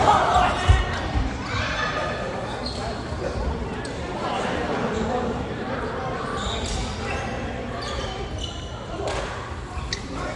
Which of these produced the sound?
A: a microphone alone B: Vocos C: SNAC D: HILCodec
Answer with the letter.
A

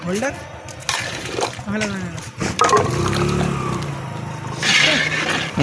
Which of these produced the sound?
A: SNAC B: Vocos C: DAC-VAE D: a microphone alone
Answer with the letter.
D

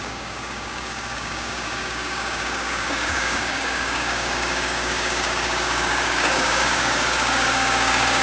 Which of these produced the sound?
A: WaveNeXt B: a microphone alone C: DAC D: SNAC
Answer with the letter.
C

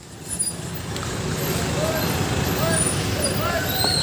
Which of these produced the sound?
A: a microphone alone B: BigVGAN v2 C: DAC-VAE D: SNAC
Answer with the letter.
A